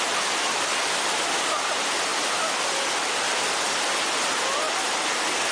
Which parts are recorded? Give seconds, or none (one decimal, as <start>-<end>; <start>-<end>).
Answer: 0.0-5.5